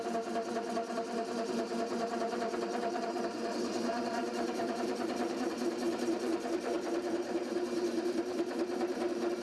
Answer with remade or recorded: remade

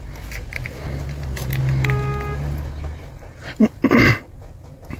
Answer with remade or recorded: recorded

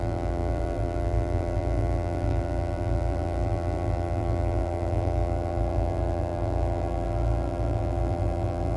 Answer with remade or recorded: remade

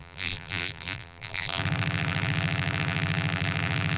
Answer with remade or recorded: remade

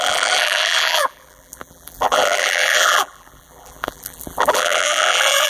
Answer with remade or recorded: remade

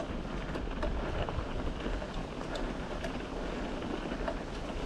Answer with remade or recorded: recorded